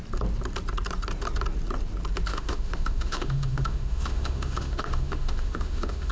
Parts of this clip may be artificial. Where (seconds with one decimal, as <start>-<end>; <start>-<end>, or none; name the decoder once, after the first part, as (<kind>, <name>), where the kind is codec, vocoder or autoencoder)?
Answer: 2.3-6.1 (autoencoder, DAC-VAE)